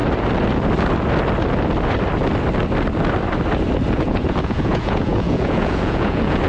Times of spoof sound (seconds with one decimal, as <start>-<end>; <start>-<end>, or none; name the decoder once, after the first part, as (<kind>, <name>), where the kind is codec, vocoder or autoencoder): 3.9-6.5 (vocoder, Vocos)

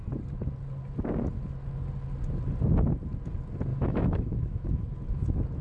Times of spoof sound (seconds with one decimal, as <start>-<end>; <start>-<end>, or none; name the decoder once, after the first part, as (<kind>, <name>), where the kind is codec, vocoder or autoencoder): 3.7-4.8 (autoencoder, DAC-VAE)